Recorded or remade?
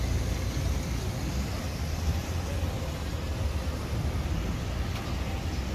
recorded